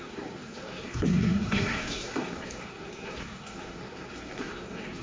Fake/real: fake